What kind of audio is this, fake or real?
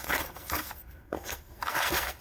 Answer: fake